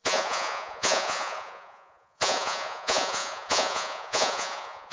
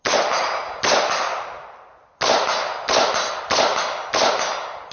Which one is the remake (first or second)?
first